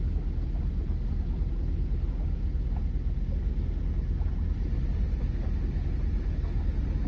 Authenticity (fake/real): real